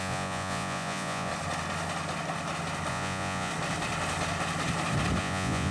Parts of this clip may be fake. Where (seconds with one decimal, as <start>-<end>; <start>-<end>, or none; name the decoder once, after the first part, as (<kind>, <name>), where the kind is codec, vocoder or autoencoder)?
0.0-1.3 (vocoder, Vocos); 2.9-3.5; 5.2-5.7